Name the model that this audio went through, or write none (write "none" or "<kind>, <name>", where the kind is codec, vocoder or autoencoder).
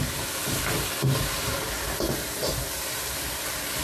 none